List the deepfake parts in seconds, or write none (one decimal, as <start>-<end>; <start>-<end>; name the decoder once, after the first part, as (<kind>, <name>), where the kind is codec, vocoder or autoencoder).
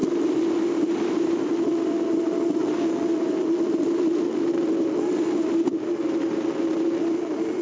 none